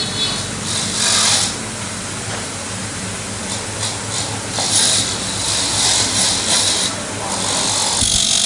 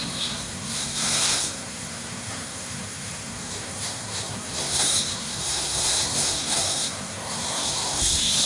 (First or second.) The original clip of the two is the first